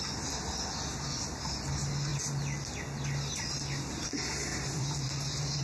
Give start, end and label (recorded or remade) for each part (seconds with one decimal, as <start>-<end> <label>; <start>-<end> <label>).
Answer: 0.0-4.5 recorded; 4.5-5.6 remade